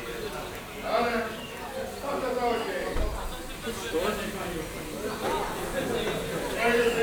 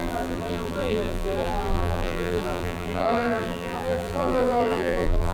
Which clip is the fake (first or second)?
second